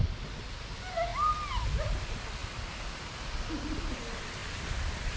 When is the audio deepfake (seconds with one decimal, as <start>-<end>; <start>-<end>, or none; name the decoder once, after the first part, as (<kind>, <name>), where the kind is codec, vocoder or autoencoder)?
none